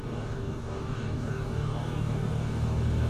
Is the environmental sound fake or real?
fake